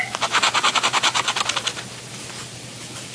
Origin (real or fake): real